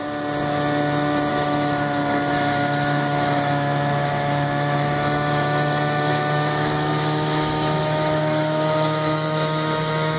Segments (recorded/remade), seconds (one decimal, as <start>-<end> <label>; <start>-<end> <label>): 0.0-1.3 recorded; 1.3-10.2 remade